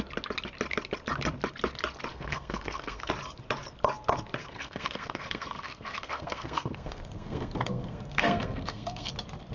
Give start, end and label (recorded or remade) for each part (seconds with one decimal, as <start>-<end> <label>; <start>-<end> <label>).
0.0-2.1 recorded; 2.1-3.1 remade; 3.1-4.4 recorded; 4.4-9.1 remade; 9.1-9.5 recorded